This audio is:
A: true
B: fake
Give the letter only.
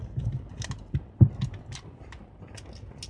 A